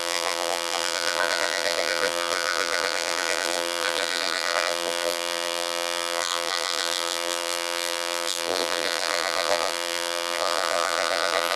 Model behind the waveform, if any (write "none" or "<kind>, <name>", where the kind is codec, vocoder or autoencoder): vocoder, BigVGAN v2